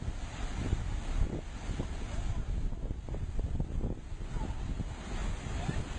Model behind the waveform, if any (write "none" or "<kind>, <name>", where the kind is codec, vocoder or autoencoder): none